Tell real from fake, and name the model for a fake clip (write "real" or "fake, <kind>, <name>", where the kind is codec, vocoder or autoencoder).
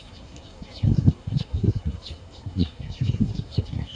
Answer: fake, codec, SNAC